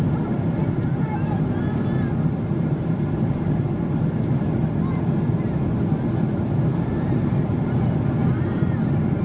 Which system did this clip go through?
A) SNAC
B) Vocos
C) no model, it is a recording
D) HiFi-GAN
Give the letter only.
C